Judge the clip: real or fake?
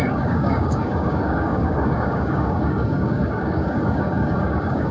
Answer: fake